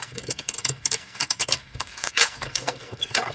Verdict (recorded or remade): remade